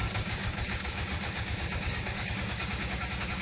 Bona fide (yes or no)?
no